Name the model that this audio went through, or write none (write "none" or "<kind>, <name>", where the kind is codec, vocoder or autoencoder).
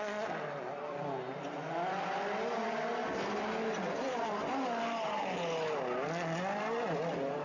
none